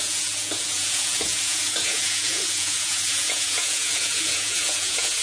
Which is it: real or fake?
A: fake